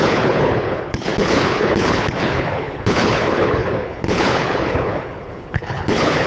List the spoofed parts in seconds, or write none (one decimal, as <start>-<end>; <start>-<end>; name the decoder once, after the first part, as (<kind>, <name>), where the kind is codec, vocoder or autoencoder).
0.0-6.3 (codec, HILCodec)